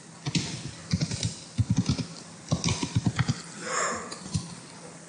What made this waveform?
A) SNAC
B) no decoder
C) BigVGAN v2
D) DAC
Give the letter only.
B